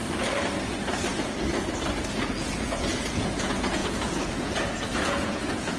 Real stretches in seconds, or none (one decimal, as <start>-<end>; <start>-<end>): 0.0-2.1